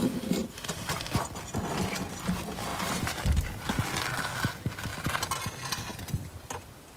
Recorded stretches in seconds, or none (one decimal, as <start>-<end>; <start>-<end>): 0.0-0.4; 1.0-2.7; 3.7-7.0